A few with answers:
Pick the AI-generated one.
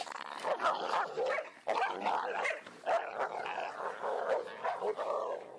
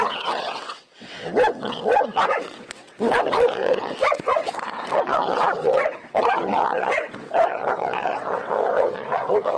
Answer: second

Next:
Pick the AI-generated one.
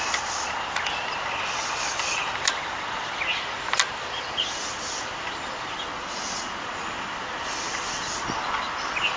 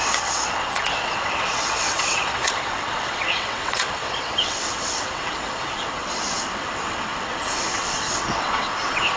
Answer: second